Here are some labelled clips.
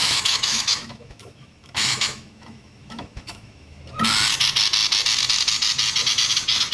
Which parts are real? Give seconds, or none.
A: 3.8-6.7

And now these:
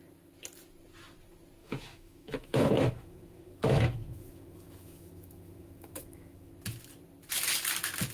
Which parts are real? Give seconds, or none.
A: 0.0-1.6; 6.5-8.1

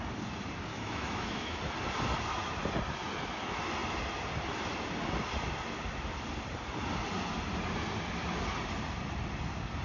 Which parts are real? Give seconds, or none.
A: 0.0-0.7; 1.6-9.8

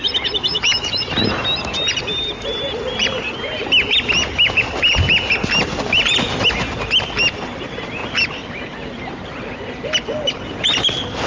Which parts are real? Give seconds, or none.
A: 0.0-0.5; 1.0-11.3